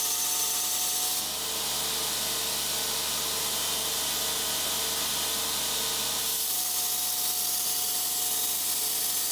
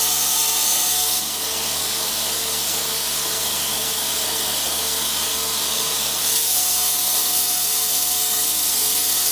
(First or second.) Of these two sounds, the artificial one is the second